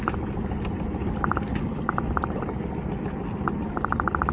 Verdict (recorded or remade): recorded